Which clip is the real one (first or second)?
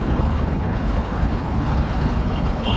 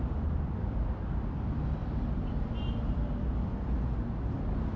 second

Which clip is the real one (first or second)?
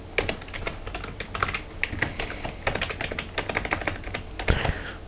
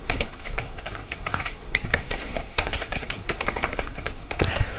first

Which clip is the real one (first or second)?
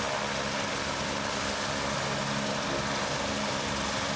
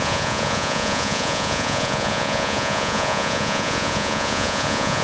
first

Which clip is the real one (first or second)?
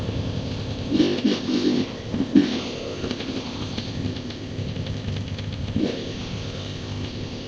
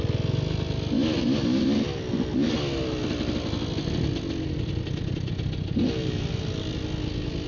second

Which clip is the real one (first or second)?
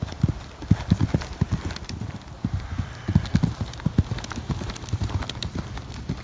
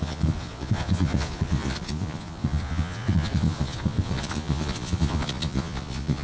first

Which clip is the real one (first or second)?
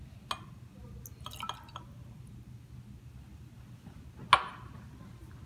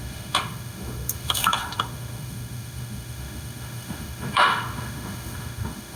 first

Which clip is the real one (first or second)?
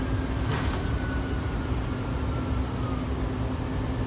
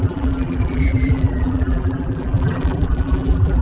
first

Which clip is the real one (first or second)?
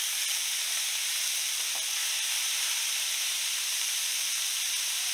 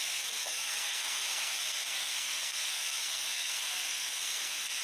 first